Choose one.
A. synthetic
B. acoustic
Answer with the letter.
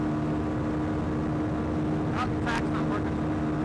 B